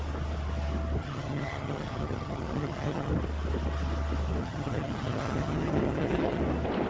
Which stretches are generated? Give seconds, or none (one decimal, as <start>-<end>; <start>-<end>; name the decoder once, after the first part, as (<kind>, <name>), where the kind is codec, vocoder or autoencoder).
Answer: 1.0-3.1 (vocoder, HiFi-GAN); 4.4-6.4